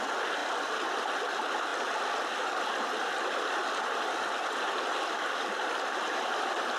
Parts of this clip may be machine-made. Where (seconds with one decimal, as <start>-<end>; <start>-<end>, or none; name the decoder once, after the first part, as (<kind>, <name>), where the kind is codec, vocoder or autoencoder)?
none